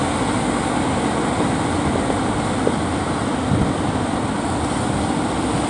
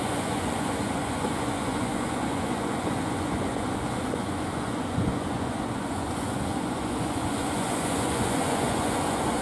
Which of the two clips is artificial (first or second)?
second